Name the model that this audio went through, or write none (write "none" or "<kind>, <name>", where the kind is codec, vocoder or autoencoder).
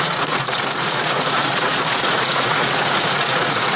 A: vocoder, Vocos